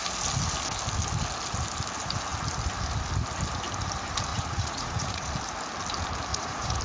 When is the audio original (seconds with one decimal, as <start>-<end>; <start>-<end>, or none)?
0.0-4.3; 5.3-6.3